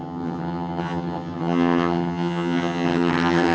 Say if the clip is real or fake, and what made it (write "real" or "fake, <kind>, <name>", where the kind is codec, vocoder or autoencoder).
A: fake, vocoder, HiFi-GAN